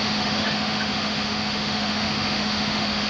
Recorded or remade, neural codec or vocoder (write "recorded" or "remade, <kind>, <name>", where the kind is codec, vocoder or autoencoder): remade, autoencoder, DAC-VAE